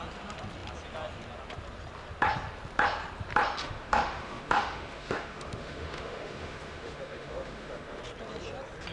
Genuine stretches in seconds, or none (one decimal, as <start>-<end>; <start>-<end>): 0.0-3.6; 8.0-8.9